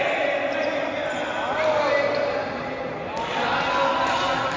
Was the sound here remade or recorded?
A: recorded